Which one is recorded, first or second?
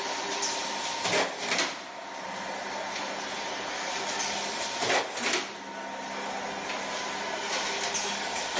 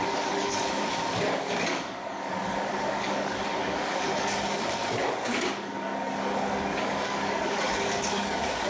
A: first